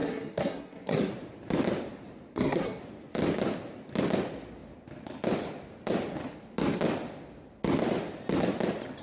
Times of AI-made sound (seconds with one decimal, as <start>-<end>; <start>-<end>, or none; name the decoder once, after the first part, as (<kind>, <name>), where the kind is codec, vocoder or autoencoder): 0.0-1.1 (codec, SNAC); 2.3-2.8